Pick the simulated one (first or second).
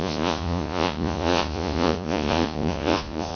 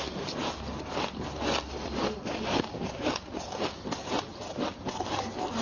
first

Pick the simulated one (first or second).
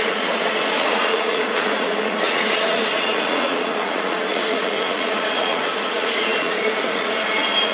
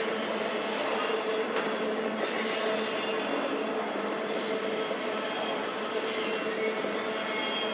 first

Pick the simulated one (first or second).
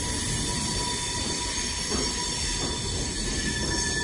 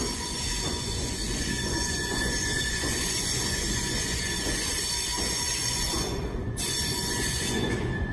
second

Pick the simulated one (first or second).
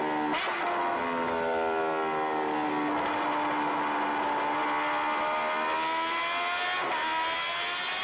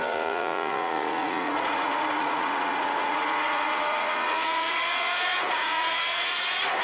second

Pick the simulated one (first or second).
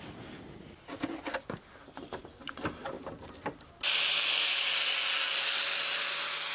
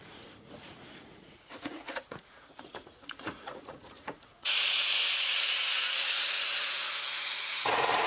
second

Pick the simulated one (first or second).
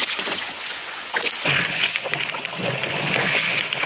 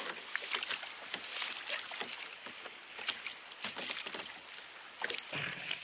first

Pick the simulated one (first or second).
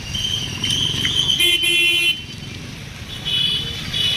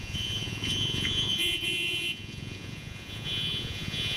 second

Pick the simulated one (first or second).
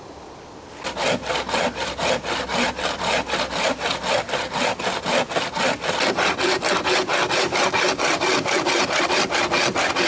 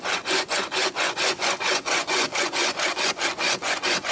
second